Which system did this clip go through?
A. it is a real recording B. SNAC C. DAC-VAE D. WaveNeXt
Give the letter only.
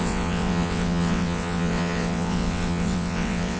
D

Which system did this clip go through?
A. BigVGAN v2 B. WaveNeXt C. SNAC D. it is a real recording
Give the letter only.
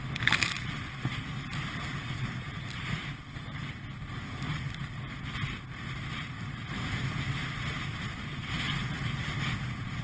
D